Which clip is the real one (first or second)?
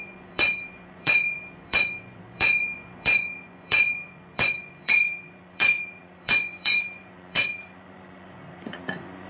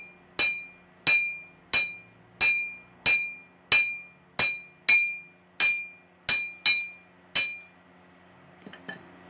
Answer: second